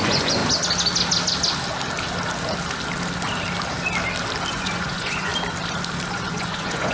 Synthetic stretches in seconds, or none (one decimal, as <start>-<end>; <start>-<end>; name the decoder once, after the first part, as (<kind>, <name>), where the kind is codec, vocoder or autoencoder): 0.0-0.4 (vocoder, Vocos); 4.5-5.3; 6.1-6.9

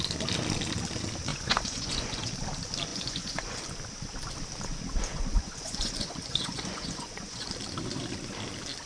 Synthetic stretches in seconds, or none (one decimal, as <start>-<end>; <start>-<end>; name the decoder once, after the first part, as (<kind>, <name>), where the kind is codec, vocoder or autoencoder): 1.3-2.3 (vocoder, Vocos); 2.9-3.6; 5.1-7.5

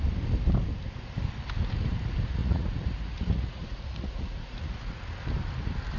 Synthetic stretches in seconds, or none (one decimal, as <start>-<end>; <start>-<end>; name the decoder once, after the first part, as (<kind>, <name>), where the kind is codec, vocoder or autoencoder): 2.4-5.0 (vocoder, Vocos)

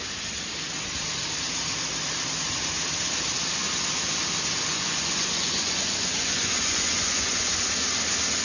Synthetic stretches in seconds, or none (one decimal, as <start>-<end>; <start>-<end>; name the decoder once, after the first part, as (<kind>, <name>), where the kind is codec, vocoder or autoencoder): 4.7-7.6 (vocoder, Vocos)

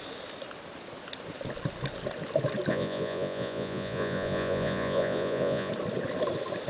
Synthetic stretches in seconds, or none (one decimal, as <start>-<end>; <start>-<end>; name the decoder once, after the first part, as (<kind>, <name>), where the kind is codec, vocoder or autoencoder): 2.7-5.7 (vocoder, Vocos)

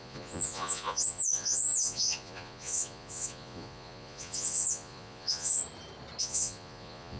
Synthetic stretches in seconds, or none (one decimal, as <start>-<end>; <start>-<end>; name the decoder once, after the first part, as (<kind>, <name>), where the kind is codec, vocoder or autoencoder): 0.0-5.6 (vocoder, Vocos); 6.2-7.2

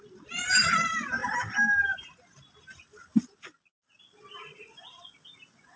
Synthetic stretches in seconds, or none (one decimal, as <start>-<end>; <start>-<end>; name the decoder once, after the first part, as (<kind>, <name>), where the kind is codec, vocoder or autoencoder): none

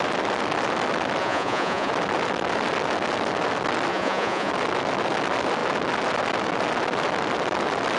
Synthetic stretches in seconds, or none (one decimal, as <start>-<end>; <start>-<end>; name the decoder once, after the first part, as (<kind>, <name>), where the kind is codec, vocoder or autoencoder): 1.2-1.9 (vocoder, Vocos); 3.9-4.5